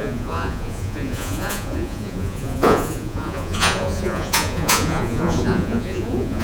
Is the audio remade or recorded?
remade